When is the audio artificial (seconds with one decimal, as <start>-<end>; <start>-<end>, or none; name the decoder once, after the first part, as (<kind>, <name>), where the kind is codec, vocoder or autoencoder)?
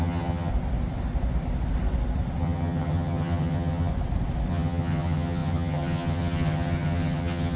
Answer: 0.0-0.5 (vocoder, HiFi-GAN); 2.4-3.9; 4.5-7.6